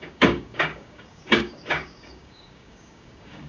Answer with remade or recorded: remade